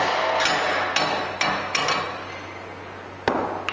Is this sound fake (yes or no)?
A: no